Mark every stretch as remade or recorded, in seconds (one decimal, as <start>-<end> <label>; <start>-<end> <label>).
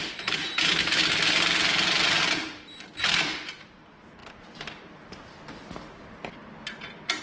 0.0-4.2 recorded; 4.2-5.5 remade; 5.5-7.2 recorded